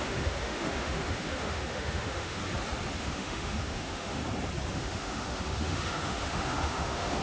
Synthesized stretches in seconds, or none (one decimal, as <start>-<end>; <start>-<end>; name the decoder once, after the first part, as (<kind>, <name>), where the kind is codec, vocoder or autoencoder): 0.0-2.4 (autoencoder, DAC-VAE); 3.0-4.2; 4.7-7.2